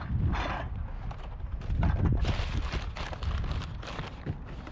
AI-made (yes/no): no